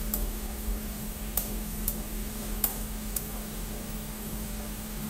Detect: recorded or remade remade